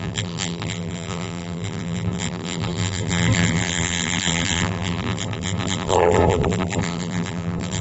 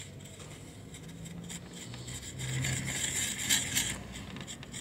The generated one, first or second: first